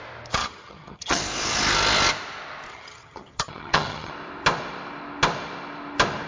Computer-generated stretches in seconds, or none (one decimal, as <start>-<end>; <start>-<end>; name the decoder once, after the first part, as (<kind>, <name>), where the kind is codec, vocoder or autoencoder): 0.4-1.2 (vocoder, HiFi-GAN); 2.7-4.1